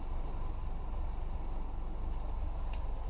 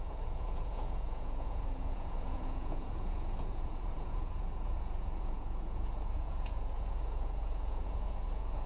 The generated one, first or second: second